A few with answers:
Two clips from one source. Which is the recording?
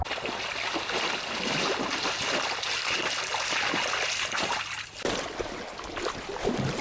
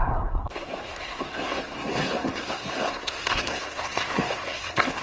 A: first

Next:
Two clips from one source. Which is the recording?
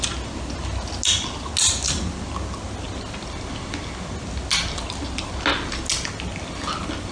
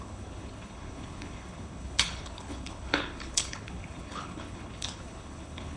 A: first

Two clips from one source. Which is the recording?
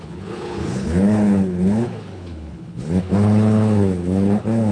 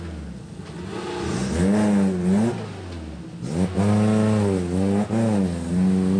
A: second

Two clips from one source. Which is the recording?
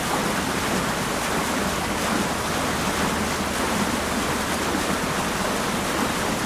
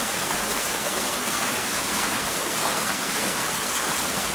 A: first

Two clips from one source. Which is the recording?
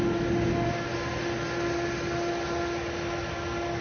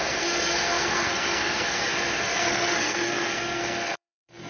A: first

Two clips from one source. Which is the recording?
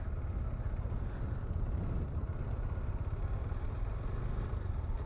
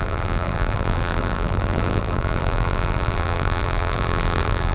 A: first